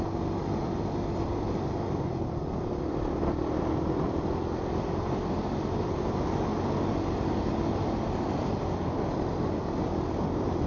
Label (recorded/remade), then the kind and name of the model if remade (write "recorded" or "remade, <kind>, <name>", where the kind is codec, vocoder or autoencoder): recorded